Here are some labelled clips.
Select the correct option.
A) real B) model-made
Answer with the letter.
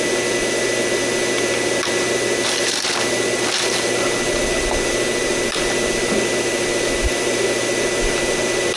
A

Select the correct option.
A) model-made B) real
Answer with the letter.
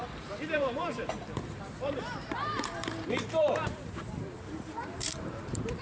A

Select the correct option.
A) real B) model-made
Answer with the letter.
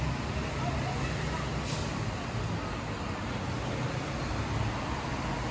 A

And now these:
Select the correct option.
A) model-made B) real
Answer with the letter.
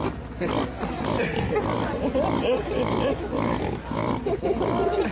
B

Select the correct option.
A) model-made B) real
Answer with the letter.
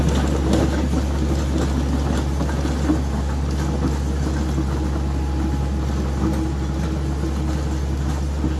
B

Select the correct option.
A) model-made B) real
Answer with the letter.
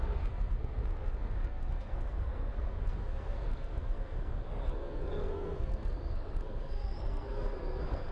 A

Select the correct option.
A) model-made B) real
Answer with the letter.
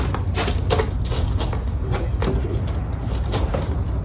B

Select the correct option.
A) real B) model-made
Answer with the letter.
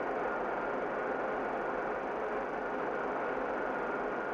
A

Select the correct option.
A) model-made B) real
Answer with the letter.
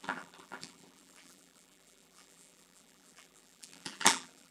A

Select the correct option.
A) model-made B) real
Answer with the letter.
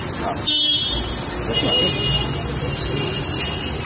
B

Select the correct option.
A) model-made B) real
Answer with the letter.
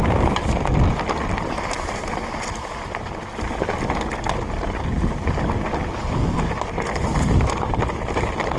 B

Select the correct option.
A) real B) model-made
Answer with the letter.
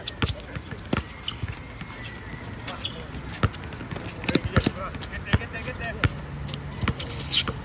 A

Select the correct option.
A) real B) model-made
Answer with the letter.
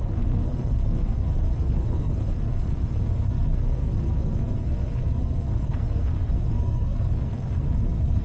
B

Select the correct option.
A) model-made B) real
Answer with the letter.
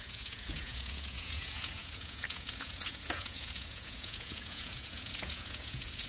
A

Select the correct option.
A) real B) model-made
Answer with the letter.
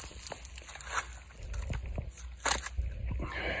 A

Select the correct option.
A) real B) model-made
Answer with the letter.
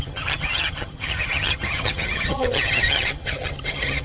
B